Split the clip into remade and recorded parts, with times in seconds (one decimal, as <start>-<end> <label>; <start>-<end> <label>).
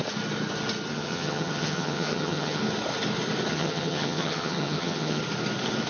0.0-0.9 recorded; 0.9-2.6 remade; 2.6-3.5 recorded; 3.5-5.2 remade; 5.2-5.9 recorded